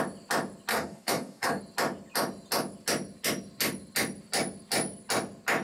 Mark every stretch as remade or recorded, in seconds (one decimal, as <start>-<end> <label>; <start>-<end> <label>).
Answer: 0.0-0.7 recorded; 0.7-1.6 remade; 1.6-5.6 recorded